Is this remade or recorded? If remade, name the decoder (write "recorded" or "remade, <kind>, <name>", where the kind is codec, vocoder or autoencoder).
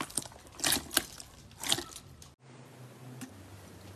recorded